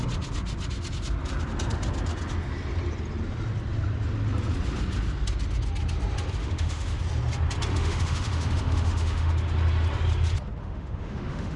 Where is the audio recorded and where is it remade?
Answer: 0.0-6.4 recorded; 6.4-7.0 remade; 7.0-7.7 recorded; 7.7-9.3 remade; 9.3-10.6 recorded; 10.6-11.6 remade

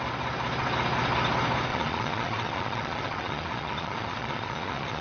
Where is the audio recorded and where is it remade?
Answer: 0.0-1.7 recorded; 1.7-5.0 remade

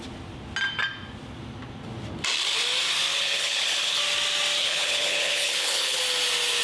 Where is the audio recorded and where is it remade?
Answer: 0.0-3.1 recorded; 3.1-4.0 remade; 4.0-4.6 recorded; 4.6-6.0 remade; 6.0-6.6 recorded

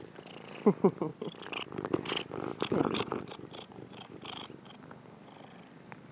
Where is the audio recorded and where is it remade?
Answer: 0.0-1.1 recorded; 1.1-1.6 remade; 1.6-2.5 recorded; 2.5-4.7 remade; 4.7-6.1 recorded

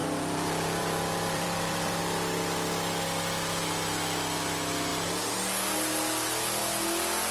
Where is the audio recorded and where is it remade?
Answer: 0.0-2.0 remade; 2.0-7.3 recorded

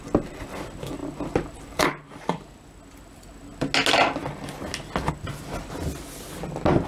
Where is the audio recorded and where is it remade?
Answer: 0.0-6.9 recorded

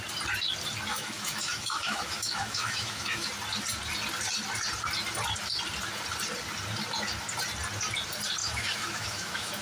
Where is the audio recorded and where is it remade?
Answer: 0.0-0.9 recorded; 0.9-3.3 remade; 3.3-8.4 recorded; 8.4-9.6 remade